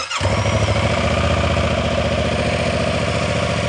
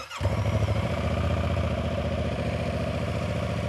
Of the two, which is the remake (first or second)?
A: second